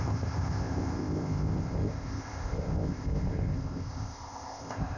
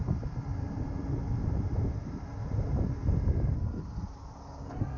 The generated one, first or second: first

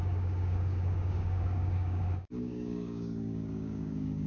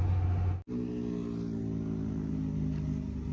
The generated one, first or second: first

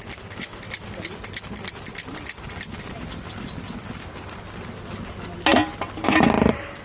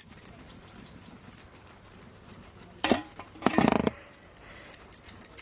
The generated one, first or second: second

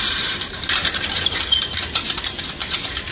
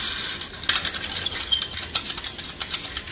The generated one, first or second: first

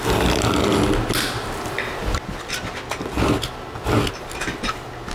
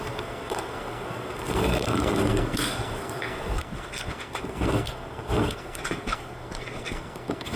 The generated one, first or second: second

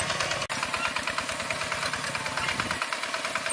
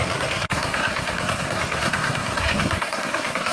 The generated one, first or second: second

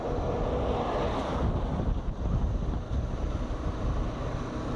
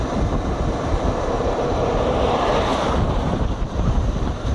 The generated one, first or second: second